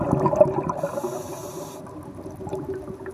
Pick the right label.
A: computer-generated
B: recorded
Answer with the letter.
B